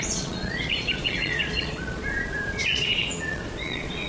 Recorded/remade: remade